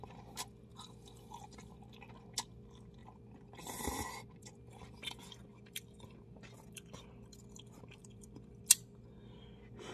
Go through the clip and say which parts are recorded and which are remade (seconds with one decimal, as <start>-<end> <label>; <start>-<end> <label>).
0.0-0.7 recorded; 0.7-1.7 remade; 1.7-3.0 recorded; 3.0-6.4 remade; 6.4-8.0 recorded; 8.0-8.6 remade; 8.6-9.9 recorded